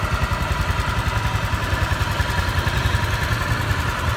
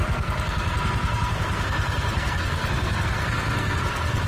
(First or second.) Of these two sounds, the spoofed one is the second